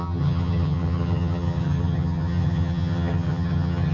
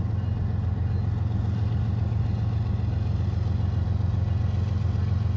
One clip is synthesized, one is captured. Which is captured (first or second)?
second